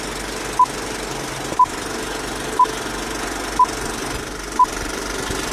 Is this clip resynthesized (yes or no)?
no